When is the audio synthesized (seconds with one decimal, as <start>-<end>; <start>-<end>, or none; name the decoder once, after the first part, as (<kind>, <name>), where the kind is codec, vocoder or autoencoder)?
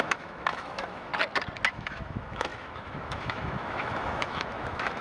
0.0-1.1 (autoencoder, DAC-VAE); 1.7-5.0